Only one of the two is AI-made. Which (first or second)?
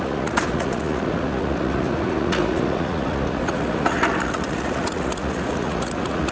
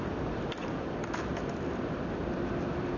first